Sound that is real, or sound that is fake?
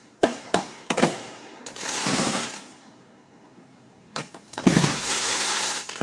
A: fake